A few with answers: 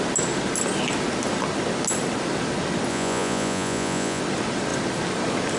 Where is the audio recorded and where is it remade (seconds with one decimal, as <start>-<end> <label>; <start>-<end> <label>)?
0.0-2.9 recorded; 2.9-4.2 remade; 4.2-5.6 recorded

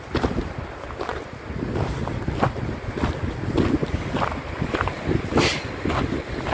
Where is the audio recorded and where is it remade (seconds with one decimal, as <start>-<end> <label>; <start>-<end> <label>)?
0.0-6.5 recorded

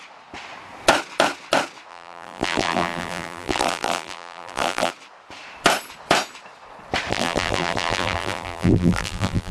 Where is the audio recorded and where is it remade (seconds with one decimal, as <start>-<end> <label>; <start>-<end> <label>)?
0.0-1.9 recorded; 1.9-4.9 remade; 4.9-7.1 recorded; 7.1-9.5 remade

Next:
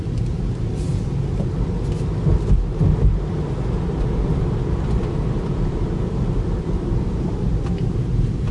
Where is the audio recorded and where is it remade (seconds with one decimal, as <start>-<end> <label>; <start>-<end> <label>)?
0.0-0.9 remade; 0.9-3.9 recorded; 3.9-8.5 remade

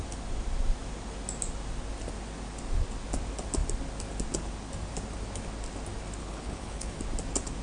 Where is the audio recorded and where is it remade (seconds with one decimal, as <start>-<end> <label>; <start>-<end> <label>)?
0.0-6.2 recorded; 6.2-7.0 remade; 7.0-7.6 recorded

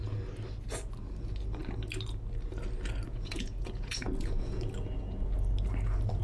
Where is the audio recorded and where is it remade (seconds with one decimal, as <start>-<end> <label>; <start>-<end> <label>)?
0.0-3.1 recorded; 3.1-4.6 remade; 4.6-6.2 recorded

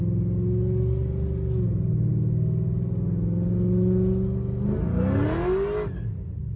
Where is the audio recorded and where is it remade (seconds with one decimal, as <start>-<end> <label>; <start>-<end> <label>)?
0.0-6.6 recorded

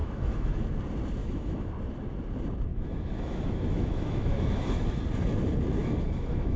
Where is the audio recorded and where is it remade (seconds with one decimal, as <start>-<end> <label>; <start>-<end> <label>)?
0.0-0.6 remade; 0.6-1.2 recorded; 1.2-1.7 remade; 1.7-2.7 recorded; 2.7-5.0 remade; 5.0-5.8 recorded; 5.8-6.6 remade